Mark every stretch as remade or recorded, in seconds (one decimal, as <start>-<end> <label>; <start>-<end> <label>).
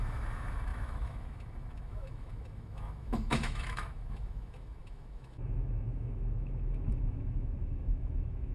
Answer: 0.0-8.5 remade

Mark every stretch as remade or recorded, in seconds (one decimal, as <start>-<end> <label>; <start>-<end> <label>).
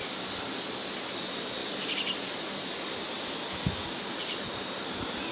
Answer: 0.0-5.3 recorded